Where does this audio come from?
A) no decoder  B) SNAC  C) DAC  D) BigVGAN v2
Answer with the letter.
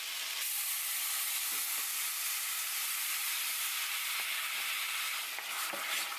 A